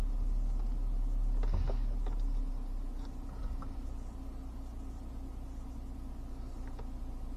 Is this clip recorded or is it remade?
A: recorded